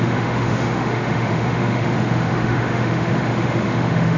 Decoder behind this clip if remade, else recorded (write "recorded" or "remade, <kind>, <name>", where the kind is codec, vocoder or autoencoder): remade, autoencoder, DAC-VAE